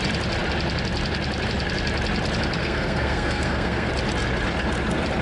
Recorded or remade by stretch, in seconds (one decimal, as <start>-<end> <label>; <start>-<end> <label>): 0.0-2.6 recorded; 2.6-3.9 remade; 3.9-5.2 recorded